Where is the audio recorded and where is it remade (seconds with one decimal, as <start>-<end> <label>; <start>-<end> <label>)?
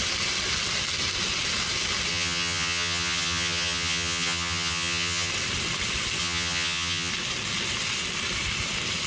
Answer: 0.0-2.1 recorded; 2.1-5.3 remade; 5.3-6.2 recorded; 6.2-7.1 remade; 7.1-9.1 recorded